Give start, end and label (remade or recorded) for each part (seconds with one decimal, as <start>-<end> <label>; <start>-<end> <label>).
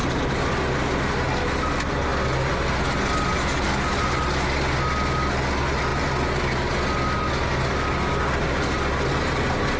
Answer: 0.0-9.8 recorded